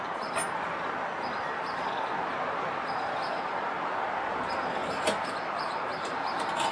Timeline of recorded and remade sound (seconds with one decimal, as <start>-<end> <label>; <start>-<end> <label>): 0.0-6.7 recorded